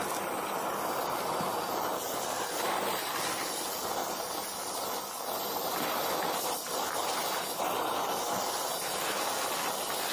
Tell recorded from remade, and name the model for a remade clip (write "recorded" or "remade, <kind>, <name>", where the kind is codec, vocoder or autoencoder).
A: recorded